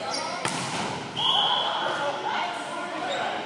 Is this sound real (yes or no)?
yes